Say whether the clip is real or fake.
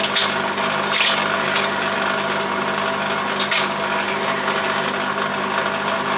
real